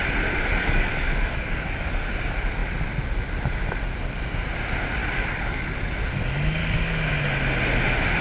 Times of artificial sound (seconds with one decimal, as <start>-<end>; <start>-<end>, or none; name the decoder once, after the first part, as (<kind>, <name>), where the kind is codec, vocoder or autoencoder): 0.5-2.1 (codec, DAC); 5.0-6.1; 6.6-7.1